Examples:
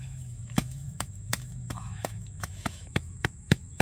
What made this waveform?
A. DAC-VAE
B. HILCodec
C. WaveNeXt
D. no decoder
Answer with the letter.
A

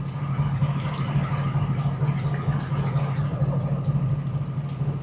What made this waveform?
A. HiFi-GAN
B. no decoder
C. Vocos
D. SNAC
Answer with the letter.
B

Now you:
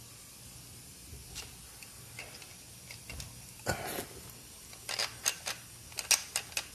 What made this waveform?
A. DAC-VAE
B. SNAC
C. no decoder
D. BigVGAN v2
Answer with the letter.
C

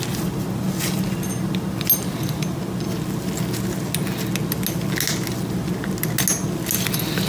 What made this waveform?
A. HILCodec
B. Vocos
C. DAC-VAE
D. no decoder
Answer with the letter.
D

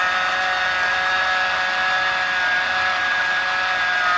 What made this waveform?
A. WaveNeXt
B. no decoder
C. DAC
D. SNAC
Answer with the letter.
B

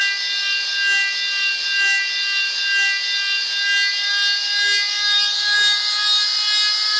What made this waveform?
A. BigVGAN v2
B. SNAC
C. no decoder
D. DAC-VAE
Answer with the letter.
C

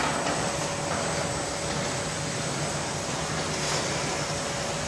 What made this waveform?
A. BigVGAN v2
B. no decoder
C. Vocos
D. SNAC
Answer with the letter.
B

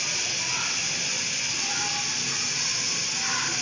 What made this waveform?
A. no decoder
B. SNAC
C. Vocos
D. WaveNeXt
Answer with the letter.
A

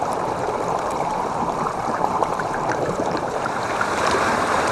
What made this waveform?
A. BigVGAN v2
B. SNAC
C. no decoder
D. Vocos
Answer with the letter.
A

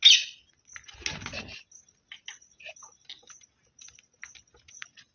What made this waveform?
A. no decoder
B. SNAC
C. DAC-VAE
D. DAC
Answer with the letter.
A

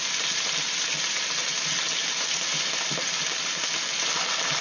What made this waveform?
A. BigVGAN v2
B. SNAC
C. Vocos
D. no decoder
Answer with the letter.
D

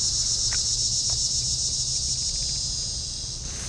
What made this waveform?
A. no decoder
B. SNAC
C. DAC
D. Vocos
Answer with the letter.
A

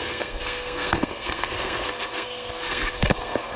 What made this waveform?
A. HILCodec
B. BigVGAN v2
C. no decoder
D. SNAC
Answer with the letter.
D